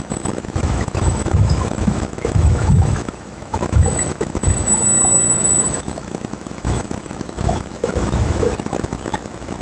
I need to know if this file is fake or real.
fake